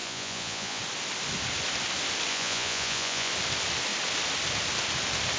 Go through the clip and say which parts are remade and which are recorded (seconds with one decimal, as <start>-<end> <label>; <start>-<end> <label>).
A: 0.0-0.8 remade; 0.8-2.3 recorded; 2.3-3.3 remade; 3.3-5.4 recorded